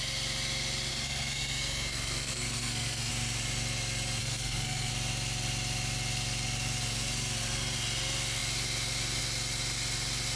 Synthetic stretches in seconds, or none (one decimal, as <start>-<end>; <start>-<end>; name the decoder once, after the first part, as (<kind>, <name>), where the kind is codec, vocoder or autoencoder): 0.9-3.1 (codec, SNAC); 4.2-4.9